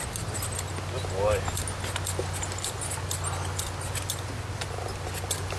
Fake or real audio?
real